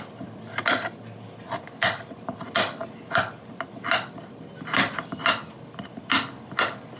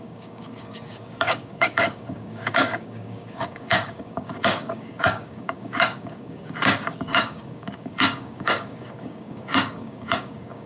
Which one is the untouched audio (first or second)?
first